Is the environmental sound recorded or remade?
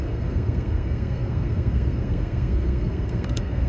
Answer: remade